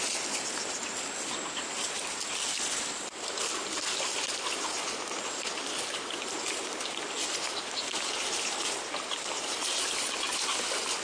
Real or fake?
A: real